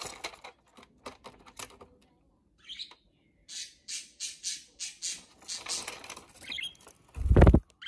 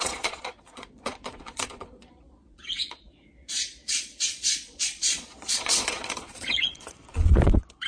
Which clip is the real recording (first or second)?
first